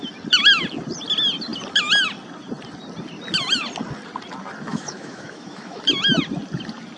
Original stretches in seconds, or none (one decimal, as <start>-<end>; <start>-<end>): 0.0-4.7; 5.8-7.0